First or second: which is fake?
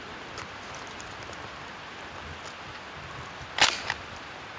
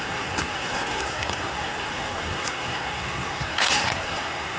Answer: second